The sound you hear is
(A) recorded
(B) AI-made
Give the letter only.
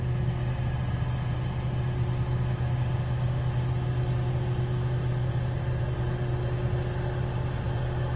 A